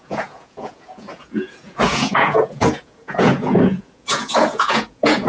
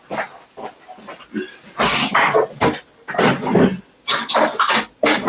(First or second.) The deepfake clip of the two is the first